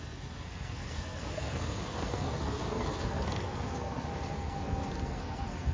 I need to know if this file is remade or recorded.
remade